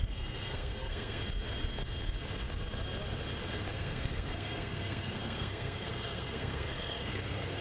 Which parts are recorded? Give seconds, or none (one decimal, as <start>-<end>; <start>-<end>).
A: 1.2-3.7